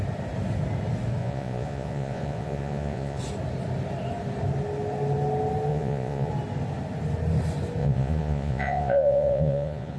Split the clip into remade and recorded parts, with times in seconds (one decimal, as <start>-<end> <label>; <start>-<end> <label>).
0.0-1.2 recorded; 1.2-3.2 remade; 3.2-5.7 recorded; 5.7-6.3 remade; 6.3-7.8 recorded; 7.8-10.0 remade